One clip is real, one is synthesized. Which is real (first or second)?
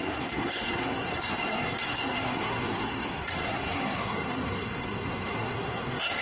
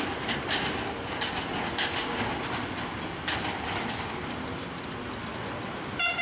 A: second